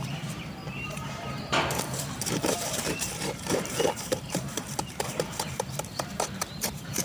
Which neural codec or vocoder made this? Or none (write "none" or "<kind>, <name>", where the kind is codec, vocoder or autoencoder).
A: vocoder, BigVGAN v2